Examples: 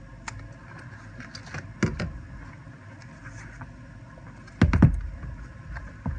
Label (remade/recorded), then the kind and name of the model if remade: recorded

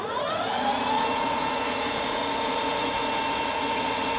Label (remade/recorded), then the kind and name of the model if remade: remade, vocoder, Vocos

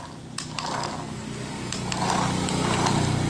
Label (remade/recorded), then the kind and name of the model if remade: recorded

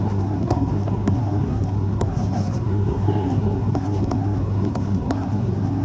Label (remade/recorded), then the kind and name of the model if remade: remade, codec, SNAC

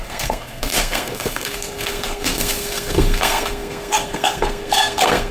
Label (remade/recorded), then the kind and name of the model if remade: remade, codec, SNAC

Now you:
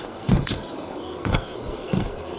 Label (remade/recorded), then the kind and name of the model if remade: remade, codec, SNAC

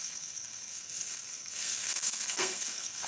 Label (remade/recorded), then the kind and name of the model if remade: remade, codec, SNAC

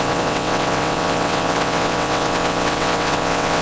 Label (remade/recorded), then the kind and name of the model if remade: remade, vocoder, WaveNeXt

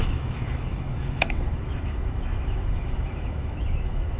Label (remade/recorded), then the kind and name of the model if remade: remade, autoencoder, DAC-VAE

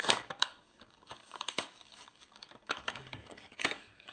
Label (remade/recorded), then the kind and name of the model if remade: remade, codec, DAC